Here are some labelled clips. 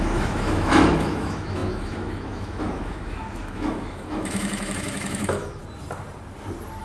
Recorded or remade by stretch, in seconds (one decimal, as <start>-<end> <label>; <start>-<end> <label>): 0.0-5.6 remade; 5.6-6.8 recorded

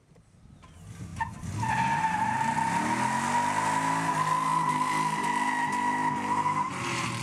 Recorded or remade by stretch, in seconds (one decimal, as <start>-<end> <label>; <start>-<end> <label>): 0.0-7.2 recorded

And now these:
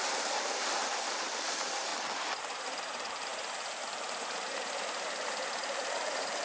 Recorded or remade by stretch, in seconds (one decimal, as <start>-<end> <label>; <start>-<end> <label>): 0.0-1.9 remade; 1.9-2.4 recorded; 2.4-6.4 remade

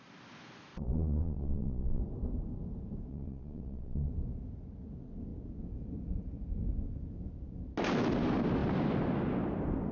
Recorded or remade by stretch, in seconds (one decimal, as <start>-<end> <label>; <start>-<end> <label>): 0.0-0.7 recorded; 0.7-2.0 remade; 2.0-3.1 recorded; 3.1-4.1 remade; 4.1-9.9 recorded